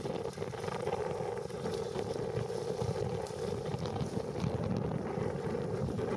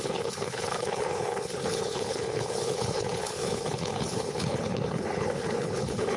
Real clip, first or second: first